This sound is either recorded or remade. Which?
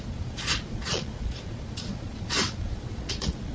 remade